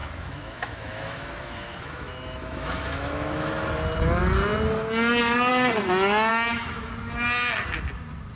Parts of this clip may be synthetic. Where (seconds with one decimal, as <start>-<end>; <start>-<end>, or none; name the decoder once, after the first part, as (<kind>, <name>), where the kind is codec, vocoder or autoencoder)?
0.0-3.5 (autoencoder, DAC-VAE); 6.3-6.9